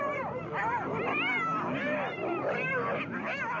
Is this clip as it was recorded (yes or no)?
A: yes